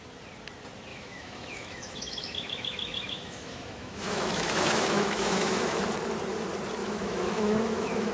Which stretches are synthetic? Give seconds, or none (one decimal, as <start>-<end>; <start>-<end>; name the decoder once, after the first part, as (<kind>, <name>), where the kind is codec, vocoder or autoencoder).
0.9-5.8 (autoencoder, DAC-VAE); 6.8-8.1